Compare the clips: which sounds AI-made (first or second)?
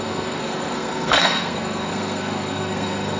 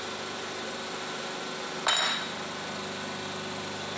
first